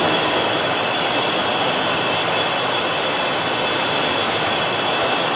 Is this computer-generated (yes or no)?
no